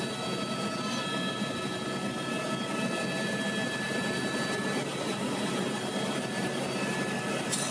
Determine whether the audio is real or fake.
real